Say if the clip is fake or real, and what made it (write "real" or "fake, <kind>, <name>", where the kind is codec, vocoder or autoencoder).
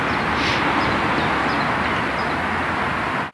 real